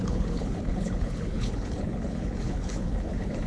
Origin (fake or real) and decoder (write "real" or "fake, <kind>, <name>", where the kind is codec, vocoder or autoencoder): fake, codec, HILCodec